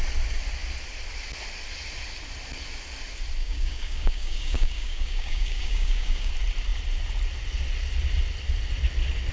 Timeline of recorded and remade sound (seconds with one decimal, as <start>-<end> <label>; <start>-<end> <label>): 0.0-3.4 recorded; 3.4-6.3 remade; 6.3-9.3 recorded